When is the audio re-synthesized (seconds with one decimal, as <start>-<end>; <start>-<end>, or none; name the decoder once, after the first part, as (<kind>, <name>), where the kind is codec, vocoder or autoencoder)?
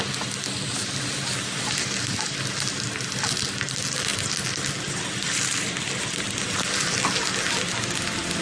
none